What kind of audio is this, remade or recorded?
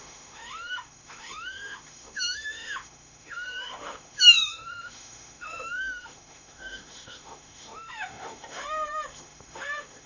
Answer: remade